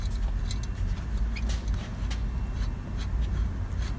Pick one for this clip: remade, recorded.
recorded